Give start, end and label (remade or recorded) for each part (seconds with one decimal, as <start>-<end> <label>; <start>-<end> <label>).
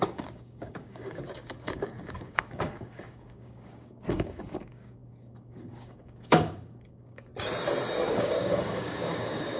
0.0-7.3 remade; 7.3-8.1 recorded; 8.1-9.6 remade